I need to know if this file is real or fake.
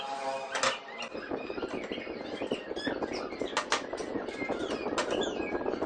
real